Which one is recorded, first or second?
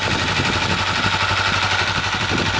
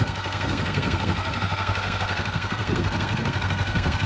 first